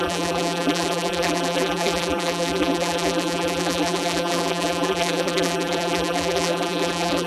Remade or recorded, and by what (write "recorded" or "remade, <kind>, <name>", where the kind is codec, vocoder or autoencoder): remade, vocoder, BigVGAN v2